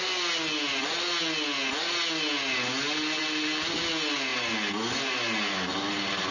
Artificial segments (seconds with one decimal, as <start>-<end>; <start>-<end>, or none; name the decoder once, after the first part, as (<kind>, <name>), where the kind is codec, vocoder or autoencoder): none